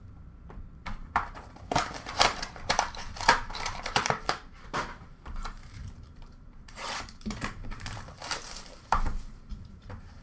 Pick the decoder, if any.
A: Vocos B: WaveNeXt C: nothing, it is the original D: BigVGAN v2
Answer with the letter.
D